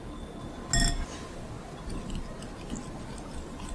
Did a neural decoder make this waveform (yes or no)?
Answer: no